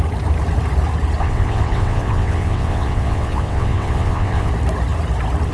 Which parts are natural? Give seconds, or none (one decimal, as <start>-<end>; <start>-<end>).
0.0-1.2; 4.5-5.5